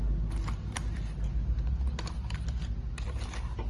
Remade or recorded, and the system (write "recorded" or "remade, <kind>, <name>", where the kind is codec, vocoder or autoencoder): recorded